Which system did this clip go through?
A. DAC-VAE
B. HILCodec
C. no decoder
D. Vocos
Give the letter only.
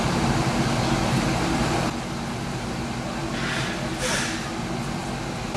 C